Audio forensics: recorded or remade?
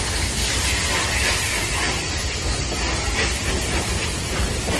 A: recorded